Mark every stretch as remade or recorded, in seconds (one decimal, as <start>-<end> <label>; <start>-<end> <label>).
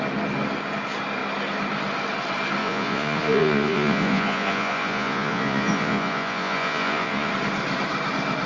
0.0-2.6 recorded; 2.6-7.3 remade; 7.3-8.5 recorded